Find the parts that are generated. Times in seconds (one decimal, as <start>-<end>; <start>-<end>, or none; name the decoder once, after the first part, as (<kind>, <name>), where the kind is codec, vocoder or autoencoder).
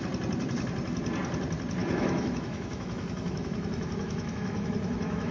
1.8-5.3 (autoencoder, DAC-VAE)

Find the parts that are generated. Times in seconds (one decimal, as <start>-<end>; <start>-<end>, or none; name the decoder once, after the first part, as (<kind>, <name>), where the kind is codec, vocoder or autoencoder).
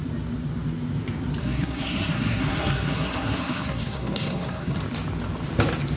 1.4-4.8 (codec, SNAC)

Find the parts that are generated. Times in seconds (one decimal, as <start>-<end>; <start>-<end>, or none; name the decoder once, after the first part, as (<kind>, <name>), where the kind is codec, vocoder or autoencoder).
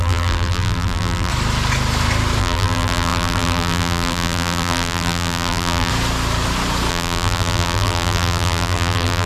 0.0-1.3 (vocoder, BigVGAN v2); 2.4-5.9; 6.9-9.3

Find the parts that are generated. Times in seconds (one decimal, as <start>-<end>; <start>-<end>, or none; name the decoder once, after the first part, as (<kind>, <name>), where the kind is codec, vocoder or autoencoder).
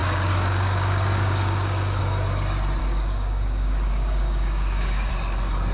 0.0-2.0 (codec, DAC); 2.8-5.1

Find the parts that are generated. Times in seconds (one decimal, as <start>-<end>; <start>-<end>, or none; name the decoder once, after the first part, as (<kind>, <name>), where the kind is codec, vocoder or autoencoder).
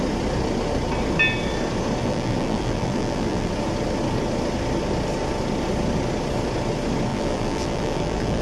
2.0-3.5 (vocoder, BigVGAN v2); 7.1-8.4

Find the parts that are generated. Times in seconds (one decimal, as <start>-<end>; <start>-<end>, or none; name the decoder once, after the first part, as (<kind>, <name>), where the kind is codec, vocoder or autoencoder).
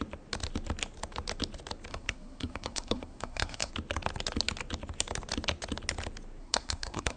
1.9-3.7 (codec, SNAC); 6.4-7.2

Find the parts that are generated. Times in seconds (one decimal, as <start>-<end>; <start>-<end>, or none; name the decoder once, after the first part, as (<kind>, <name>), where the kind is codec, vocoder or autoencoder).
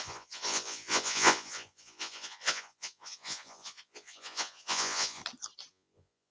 0.0-5.2 (vocoder, Vocos); 5.7-6.3